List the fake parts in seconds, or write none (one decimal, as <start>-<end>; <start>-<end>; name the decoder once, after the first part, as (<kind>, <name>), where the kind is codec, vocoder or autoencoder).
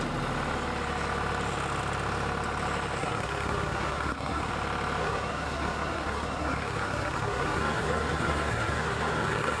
3.0-4.5 (codec, SNAC); 5.0-9.6